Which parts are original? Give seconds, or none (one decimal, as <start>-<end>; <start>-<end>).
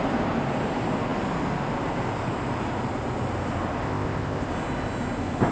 0.0-3.8; 4.5-5.5